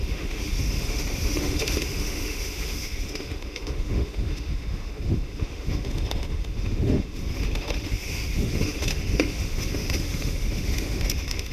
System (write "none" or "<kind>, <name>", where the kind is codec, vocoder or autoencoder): autoencoder, DAC-VAE